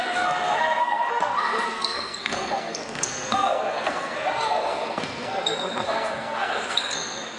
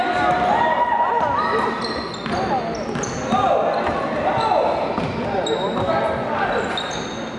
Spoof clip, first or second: first